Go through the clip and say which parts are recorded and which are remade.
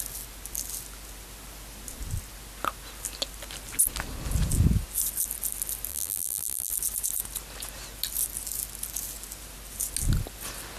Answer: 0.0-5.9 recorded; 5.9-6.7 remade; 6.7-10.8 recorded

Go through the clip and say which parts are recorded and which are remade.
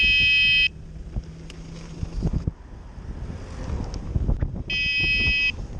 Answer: 0.0-5.8 recorded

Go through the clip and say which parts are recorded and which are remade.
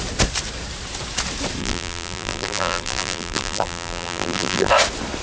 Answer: 0.0-1.6 recorded; 1.6-4.7 remade; 4.7-5.2 recorded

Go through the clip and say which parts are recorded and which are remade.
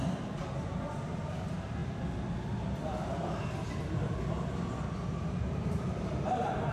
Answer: 0.0-0.4 remade; 0.4-0.9 recorded; 0.9-1.8 remade; 1.8-5.3 recorded; 5.3-6.7 remade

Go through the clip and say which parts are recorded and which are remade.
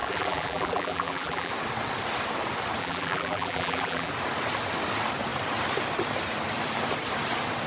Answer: 0.0-1.5 remade; 1.5-2.8 recorded; 2.8-4.1 remade; 4.1-7.7 recorded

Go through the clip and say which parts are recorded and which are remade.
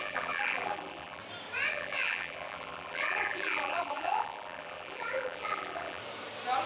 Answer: 0.0-1.2 remade; 1.2-1.7 recorded; 1.7-6.0 remade; 6.0-6.7 recorded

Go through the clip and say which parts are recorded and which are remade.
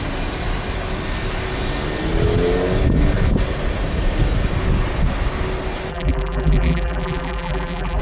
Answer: 0.0-5.9 recorded; 5.9-8.0 remade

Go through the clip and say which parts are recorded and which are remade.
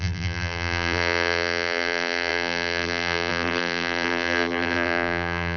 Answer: 0.0-5.6 remade